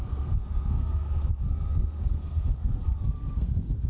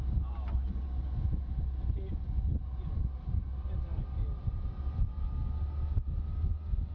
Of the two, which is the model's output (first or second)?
first